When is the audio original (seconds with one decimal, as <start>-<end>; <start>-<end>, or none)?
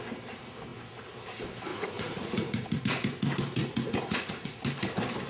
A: 0.0-1.7; 2.8-3.6; 4.6-5.3